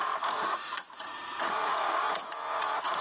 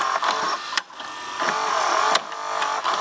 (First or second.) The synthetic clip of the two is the first